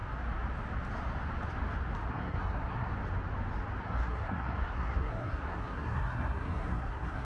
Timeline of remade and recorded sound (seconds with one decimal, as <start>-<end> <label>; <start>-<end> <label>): 0.0-2.1 recorded; 2.1-2.9 remade; 2.9-3.8 recorded; 3.8-7.2 remade